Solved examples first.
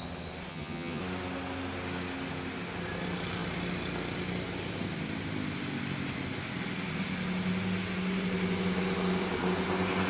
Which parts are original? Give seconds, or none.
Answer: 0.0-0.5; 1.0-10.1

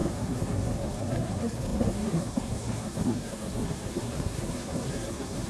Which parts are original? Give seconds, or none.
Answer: none